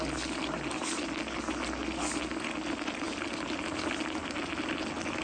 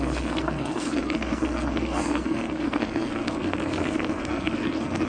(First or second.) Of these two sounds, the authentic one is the first